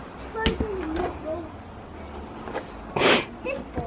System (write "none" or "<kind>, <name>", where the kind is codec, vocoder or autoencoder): none